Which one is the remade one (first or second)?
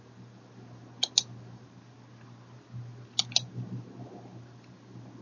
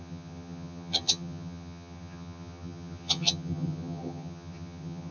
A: second